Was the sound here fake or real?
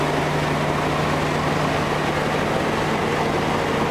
real